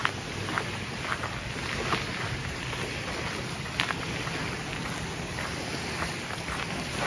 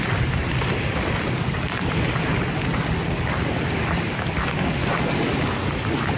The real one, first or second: first